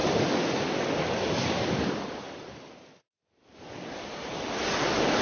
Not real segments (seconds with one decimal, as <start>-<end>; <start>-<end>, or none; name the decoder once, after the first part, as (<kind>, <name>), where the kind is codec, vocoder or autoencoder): none

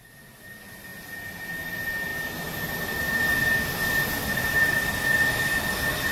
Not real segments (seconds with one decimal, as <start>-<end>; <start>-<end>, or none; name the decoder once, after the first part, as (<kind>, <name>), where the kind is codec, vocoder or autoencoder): none